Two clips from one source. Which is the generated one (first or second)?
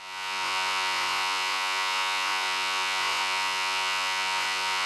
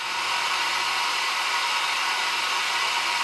first